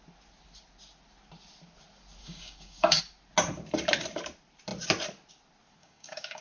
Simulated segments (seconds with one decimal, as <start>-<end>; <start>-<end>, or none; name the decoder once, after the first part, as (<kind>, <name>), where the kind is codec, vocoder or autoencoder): 2.2-3.0 (codec, DAC); 5.8-6.4